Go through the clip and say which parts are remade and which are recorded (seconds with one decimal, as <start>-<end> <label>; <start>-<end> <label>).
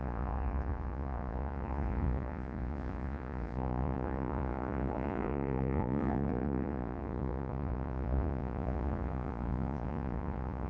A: 0.0-10.7 remade